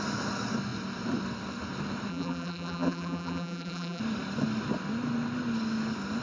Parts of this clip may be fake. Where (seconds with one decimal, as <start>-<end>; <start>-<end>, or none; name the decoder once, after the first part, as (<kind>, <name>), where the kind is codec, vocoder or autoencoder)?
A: 2.1-4.0 (vocoder, BigVGAN v2)